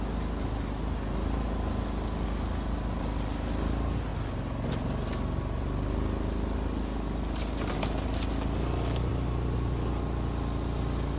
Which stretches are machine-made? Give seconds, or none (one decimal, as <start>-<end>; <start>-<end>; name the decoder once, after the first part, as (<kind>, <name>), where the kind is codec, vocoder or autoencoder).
none